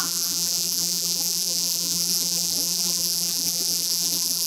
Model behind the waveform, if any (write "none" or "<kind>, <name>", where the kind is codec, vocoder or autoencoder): vocoder, BigVGAN v2